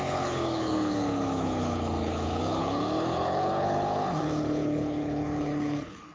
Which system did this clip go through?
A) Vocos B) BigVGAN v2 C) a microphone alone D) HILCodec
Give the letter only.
D